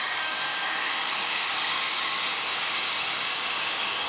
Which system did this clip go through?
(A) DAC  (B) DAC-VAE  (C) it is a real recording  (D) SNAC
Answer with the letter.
A